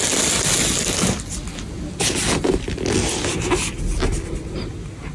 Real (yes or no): yes